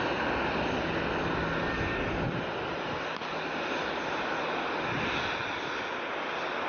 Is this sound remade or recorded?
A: recorded